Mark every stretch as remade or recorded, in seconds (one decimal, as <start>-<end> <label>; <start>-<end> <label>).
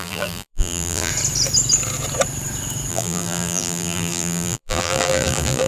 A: 0.0-1.1 remade; 1.1-2.9 recorded; 2.9-5.7 remade